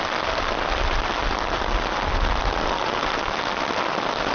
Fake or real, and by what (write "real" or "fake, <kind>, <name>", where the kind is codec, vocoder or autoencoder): real